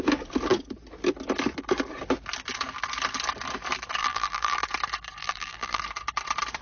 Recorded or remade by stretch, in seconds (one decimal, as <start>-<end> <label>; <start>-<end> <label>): 0.0-4.0 recorded; 4.0-4.6 remade; 4.6-5.2 recorded; 5.2-5.8 remade; 5.8-6.6 recorded